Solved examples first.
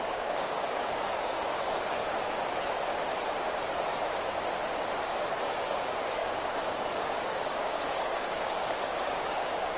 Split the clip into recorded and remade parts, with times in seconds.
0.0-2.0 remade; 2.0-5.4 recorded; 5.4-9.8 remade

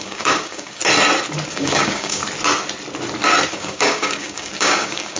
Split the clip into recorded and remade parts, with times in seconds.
0.0-0.8 remade; 0.8-1.5 recorded; 1.5-2.2 remade; 2.2-3.5 recorded; 3.5-5.2 remade

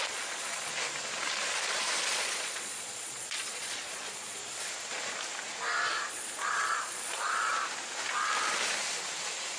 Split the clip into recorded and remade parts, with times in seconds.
0.0-0.7 remade; 0.7-2.1 recorded; 2.1-4.4 remade; 4.4-6.1 recorded; 6.1-7.5 remade; 7.5-9.6 recorded